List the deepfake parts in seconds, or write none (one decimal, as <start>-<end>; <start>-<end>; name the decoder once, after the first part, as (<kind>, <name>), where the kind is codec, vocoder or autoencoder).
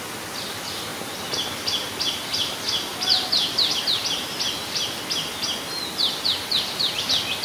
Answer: none